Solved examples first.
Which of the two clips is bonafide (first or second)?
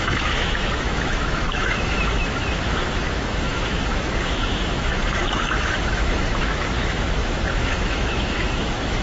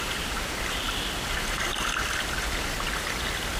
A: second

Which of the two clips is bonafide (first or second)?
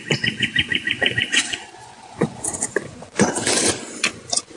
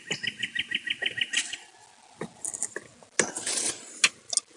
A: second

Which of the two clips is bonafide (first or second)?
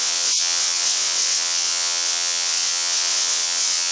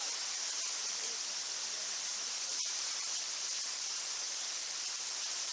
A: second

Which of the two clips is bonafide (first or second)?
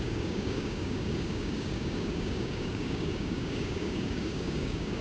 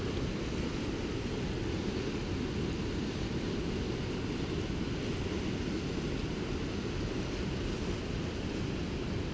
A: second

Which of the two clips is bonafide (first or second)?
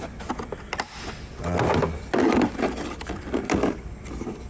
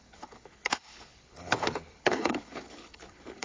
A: first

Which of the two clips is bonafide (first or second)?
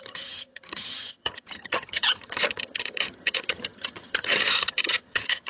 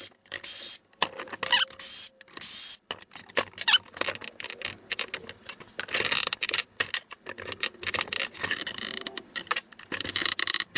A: second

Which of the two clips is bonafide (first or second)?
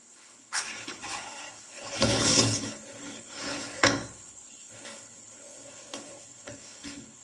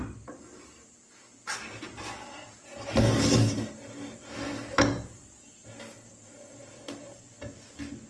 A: second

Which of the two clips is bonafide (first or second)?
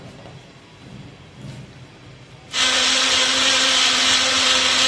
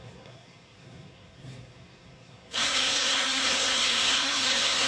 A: first